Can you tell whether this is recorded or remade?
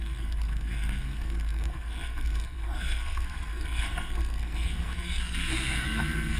remade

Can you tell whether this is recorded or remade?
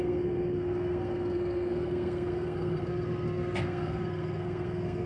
remade